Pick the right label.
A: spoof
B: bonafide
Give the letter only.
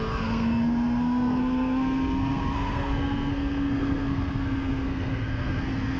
A